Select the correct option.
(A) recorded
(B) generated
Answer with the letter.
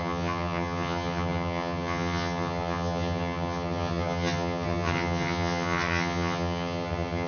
B